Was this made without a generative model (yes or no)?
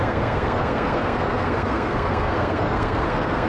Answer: no